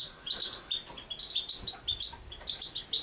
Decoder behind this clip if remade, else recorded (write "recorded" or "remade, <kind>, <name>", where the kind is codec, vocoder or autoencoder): recorded